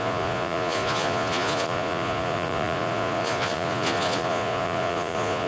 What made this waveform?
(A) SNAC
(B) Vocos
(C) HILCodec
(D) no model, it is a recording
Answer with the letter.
B